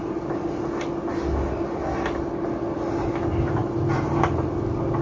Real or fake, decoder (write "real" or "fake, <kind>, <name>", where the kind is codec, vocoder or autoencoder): real